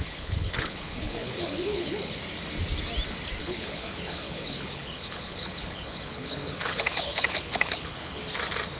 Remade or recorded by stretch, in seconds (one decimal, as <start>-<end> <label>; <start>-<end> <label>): 0.0-2.2 remade; 2.2-3.4 recorded; 3.4-8.2 remade; 8.2-8.8 recorded